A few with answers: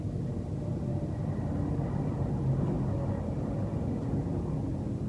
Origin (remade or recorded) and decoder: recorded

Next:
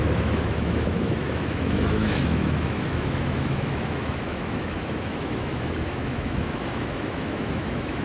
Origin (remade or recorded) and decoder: remade, autoencoder, DAC-VAE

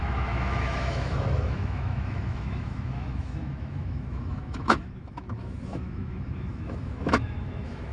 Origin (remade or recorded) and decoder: remade, autoencoder, DAC-VAE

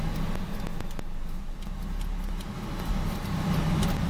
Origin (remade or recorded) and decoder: recorded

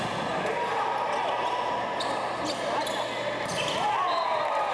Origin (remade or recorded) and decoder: recorded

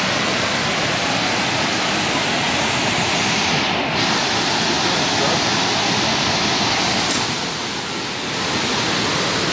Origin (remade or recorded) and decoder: recorded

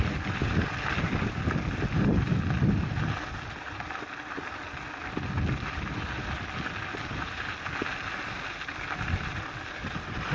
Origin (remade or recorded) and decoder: recorded